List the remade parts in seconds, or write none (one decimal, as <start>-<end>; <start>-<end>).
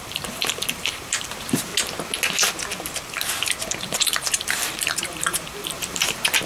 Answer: 0.0-1.7; 3.8-6.5